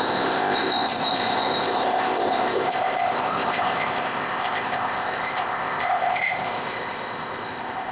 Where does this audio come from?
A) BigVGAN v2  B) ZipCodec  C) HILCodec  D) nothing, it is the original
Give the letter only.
B